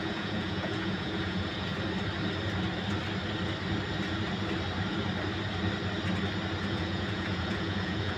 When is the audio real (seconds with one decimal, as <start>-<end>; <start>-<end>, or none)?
1.7-6.6